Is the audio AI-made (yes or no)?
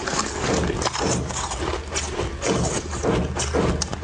no